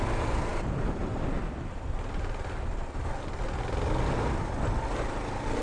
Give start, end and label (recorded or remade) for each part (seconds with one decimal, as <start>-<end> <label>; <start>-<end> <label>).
0.0-5.6 recorded